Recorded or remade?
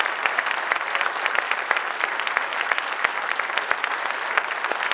recorded